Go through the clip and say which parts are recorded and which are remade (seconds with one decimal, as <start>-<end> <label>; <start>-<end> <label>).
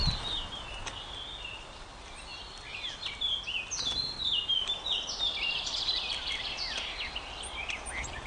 0.0-0.8 recorded; 0.8-2.3 remade; 2.3-4.6 recorded; 4.6-8.3 remade